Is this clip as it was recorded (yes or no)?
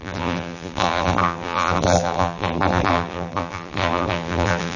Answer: no